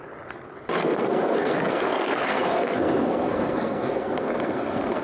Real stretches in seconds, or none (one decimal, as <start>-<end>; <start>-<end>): 0.0-0.8